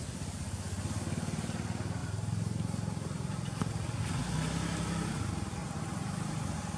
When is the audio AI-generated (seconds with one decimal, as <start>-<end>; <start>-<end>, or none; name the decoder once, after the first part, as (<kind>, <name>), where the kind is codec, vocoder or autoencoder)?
none